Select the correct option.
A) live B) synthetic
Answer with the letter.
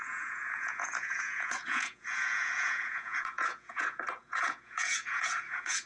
B